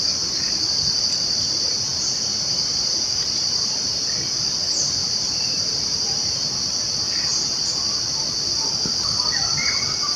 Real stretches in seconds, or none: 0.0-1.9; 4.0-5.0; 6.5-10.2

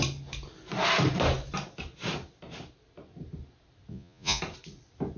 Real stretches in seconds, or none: 0.0-3.9; 4.4-5.2

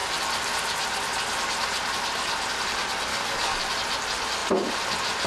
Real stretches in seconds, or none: 0.0-3.1; 3.6-5.3

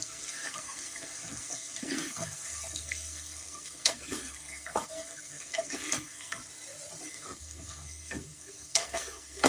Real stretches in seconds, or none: 6.4-7.1

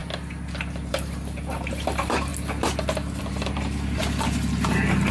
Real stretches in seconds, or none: 0.0-0.9; 2.3-3.2; 4.0-5.1

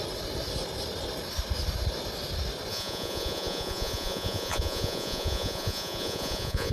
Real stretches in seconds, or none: 0.0-2.7

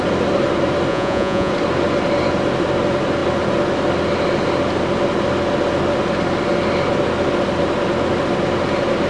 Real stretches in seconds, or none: 0.0-0.9; 1.5-9.1

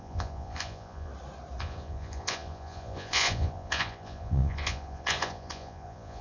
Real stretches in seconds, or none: 1.1-1.6